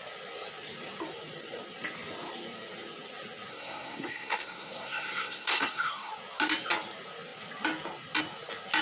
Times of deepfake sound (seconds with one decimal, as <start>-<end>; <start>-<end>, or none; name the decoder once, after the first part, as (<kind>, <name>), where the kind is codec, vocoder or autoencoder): 3.5-6.1 (codec, SNAC)